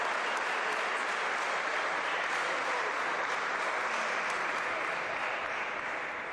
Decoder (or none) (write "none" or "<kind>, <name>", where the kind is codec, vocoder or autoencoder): none